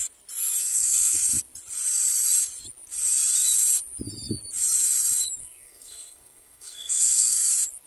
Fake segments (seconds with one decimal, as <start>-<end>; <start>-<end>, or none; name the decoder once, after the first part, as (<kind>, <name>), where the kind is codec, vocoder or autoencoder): 0.6-1.2 (codec, SNAC); 5.4-7.5